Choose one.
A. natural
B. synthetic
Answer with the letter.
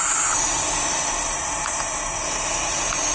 A